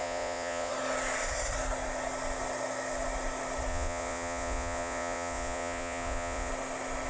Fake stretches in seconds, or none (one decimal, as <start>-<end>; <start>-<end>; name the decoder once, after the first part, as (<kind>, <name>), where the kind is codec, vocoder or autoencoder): 0.0-0.7 (vocoder, Vocos); 3.7-6.5